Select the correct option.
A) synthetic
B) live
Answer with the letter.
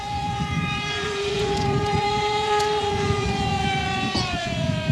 A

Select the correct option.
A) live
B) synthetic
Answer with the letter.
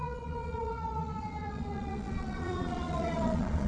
B